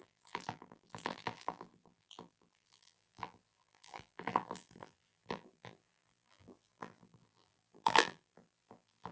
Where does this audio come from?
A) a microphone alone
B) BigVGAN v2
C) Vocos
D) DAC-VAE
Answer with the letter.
B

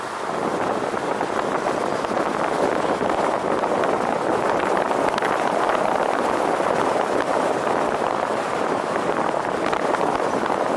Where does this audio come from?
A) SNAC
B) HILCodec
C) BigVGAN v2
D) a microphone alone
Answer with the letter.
D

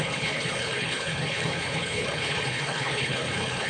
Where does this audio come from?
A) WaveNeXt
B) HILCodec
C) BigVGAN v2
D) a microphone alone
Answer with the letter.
B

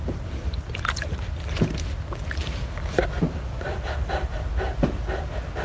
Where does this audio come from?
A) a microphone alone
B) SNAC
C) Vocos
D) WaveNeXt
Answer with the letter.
A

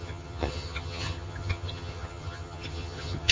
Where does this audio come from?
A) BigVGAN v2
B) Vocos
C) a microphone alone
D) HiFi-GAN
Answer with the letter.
D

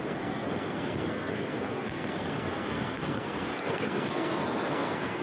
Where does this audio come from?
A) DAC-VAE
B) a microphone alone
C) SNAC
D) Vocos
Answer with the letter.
C